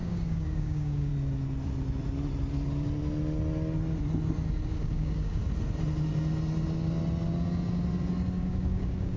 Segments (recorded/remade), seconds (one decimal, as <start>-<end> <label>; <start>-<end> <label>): 0.0-1.1 remade; 1.1-4.7 recorded; 4.7-5.4 remade; 5.4-8.4 recorded; 8.4-9.2 remade